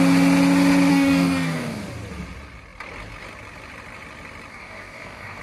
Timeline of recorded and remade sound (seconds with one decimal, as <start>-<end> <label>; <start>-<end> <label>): 0.0-0.9 recorded; 0.9-1.8 remade; 1.8-4.5 recorded; 4.5-5.4 remade